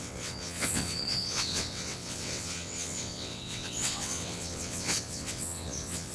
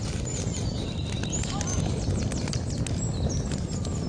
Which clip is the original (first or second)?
second